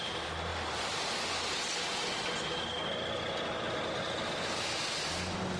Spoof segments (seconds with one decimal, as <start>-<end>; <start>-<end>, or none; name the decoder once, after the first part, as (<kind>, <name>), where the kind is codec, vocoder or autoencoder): none